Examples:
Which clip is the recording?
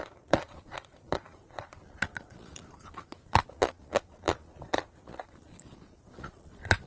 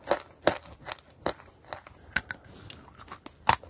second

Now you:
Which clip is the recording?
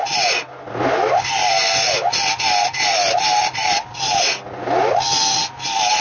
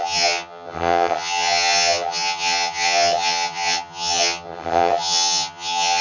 first